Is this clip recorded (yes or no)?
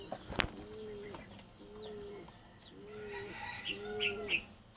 yes